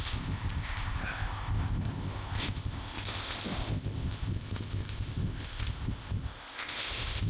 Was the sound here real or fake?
fake